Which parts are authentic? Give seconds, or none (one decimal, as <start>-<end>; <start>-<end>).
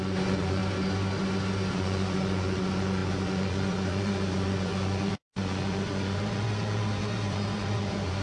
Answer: 0.6-1.7